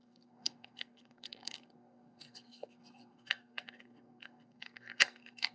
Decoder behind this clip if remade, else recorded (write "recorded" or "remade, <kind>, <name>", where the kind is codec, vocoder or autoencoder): remade, codec, SNAC